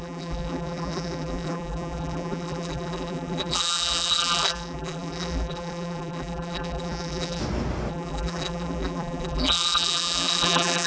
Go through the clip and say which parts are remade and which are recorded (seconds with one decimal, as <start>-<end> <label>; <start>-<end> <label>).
0.0-7.4 remade; 7.4-7.9 recorded; 7.9-10.9 remade